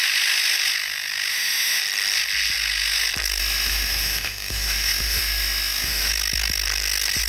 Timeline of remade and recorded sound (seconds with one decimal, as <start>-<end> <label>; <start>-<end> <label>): 0.0-1.3 recorded; 1.3-1.8 remade; 1.8-3.4 recorded; 3.4-6.1 remade; 6.1-7.3 recorded